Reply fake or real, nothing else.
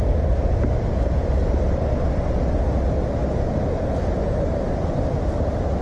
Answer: real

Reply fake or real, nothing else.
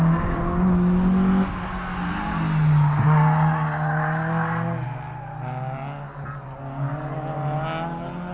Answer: real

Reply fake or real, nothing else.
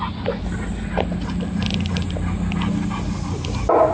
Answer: real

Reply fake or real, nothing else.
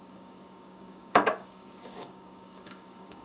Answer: fake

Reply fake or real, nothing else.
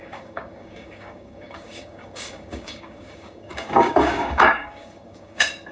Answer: fake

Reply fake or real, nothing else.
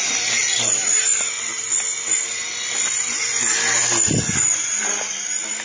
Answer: real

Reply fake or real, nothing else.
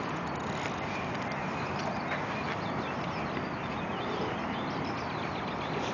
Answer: real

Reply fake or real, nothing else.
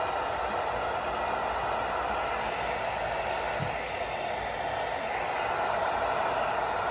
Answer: real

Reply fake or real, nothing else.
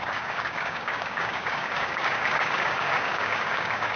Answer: fake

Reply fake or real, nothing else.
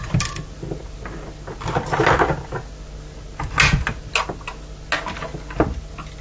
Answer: real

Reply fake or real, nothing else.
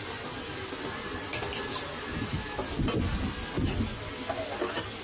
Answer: real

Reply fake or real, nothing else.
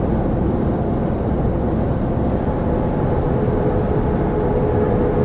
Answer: real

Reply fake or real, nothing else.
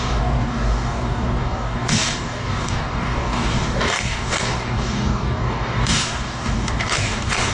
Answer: fake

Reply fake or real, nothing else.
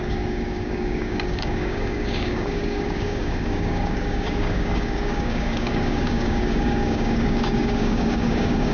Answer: fake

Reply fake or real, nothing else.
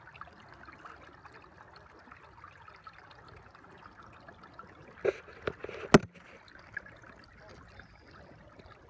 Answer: real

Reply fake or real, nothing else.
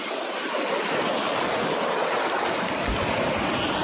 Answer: real